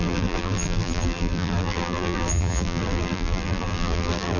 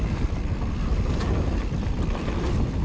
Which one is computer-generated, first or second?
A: first